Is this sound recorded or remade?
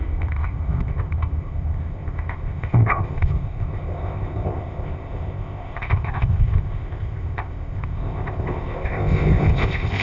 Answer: remade